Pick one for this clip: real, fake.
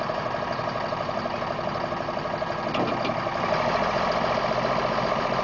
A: real